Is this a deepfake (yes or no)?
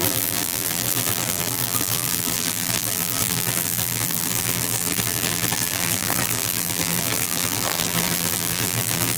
yes